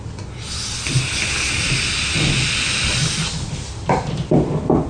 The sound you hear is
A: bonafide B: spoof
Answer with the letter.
A